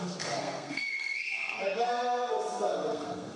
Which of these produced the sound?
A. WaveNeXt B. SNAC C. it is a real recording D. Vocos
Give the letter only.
B